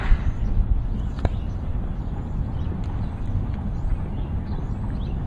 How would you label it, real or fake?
real